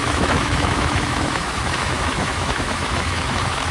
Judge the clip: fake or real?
fake